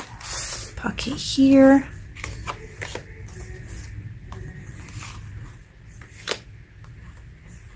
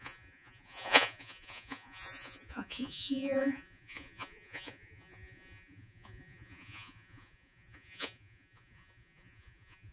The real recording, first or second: first